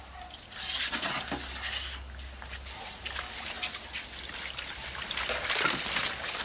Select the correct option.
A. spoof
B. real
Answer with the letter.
B